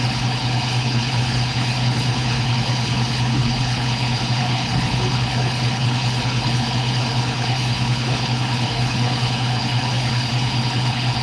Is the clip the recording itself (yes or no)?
no